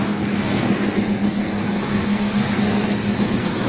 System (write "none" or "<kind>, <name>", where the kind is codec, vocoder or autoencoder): codec, SNAC